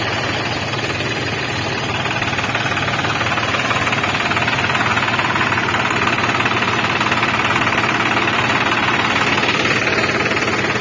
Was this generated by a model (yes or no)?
no